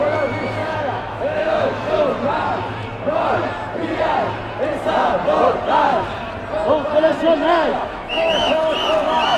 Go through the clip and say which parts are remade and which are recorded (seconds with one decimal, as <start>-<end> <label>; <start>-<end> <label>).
0.0-0.6 recorded; 0.6-1.9 remade; 1.9-7.7 recorded; 7.7-8.6 remade; 8.6-9.4 recorded